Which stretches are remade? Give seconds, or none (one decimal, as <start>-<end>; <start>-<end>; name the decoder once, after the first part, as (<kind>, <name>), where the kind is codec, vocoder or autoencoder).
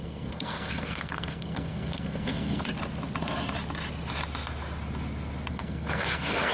0.0-2.7 (codec, SNAC); 5.5-6.5